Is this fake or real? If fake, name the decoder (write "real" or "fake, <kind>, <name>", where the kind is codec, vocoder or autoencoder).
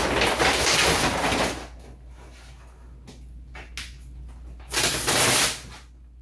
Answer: real